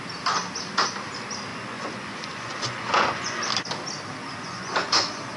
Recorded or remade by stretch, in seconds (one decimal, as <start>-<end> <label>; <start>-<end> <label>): 0.0-1.5 recorded; 1.5-3.4 remade; 3.4-4.2 recorded; 4.2-5.4 remade